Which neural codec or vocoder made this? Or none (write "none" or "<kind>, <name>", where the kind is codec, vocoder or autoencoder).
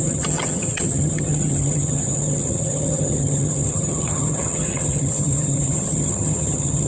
vocoder, HiFi-GAN